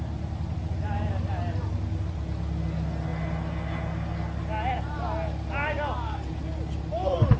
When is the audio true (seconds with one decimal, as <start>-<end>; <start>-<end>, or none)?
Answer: 0.0-7.4